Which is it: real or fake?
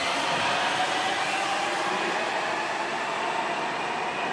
real